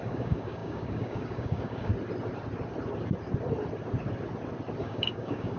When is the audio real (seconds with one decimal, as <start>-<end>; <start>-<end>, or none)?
1.9-4.8